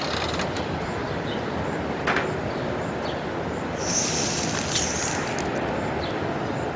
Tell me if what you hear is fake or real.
fake